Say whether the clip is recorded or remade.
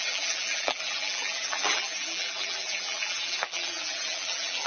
remade